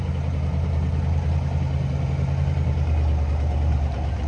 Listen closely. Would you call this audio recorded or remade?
recorded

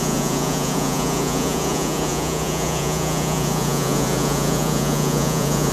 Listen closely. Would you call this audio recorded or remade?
remade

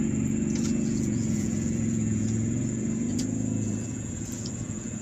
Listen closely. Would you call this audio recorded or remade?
remade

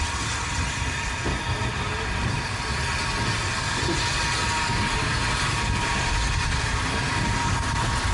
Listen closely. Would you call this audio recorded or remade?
recorded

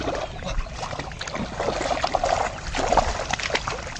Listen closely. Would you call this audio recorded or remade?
recorded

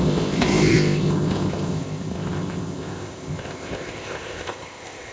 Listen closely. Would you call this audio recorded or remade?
remade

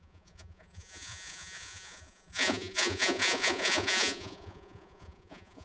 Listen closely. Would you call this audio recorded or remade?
remade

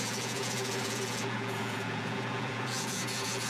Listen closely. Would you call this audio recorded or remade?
remade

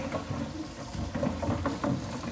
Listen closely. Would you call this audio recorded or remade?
recorded